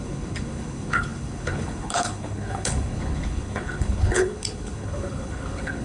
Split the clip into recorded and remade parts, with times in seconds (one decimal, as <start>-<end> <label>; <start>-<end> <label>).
0.0-5.8 remade